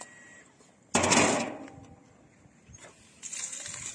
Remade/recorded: recorded